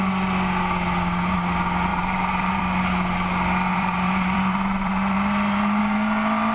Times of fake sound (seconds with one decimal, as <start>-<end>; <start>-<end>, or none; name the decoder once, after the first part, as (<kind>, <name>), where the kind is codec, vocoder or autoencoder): 1.9-2.6 (vocoder, BigVGAN v2); 3.7-5.8